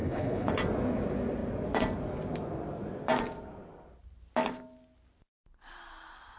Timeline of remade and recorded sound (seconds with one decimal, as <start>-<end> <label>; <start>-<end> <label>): 0.0-0.5 remade; 0.5-6.4 recorded